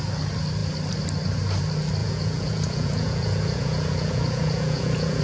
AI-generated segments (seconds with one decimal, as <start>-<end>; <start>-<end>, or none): 2.0-5.2